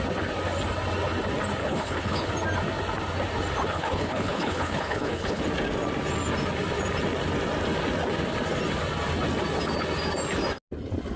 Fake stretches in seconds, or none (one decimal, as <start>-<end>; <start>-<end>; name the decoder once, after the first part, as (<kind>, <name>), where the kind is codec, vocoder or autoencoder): 1.6-2.3 (codec, HILCodec); 3.7-5.4